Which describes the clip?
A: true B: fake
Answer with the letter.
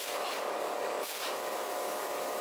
B